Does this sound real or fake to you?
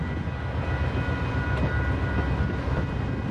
real